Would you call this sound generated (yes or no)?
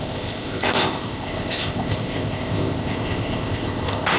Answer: yes